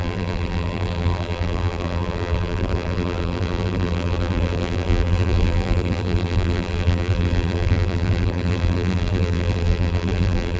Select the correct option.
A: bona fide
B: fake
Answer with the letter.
B